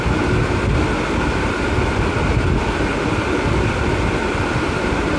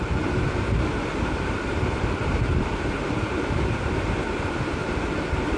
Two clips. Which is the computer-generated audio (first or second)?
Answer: second